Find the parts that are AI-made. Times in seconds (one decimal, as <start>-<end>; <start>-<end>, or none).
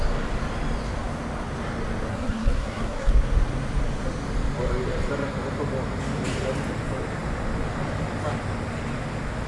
2.1-3.1